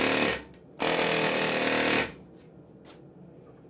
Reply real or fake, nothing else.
real